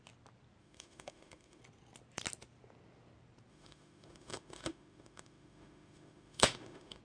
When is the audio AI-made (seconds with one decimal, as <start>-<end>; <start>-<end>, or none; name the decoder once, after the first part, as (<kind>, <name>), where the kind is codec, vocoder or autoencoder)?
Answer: 0.6-1.6 (autoencoder, DAC-VAE); 3.5-7.0

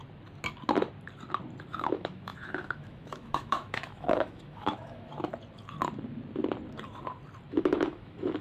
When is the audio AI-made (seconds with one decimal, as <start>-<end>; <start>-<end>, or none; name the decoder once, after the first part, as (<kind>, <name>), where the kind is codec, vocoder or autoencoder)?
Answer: 1.7-5.3 (autoencoder, DAC-VAE); 7.5-8.4

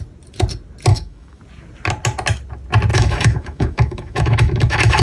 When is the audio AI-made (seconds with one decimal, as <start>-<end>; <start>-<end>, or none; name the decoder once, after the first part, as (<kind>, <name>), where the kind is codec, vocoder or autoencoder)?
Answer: 0.9-1.4 (autoencoder, DAC-VAE); 2.9-5.0